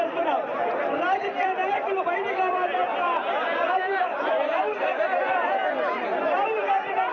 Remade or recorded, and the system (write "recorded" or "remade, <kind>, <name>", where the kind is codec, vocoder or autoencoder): recorded